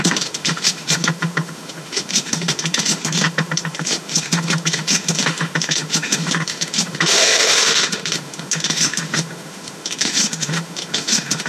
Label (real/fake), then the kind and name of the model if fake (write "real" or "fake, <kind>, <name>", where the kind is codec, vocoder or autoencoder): fake, autoencoder, DAC-VAE